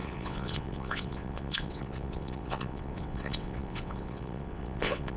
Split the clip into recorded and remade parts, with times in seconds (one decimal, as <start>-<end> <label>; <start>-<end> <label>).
0.0-5.2 remade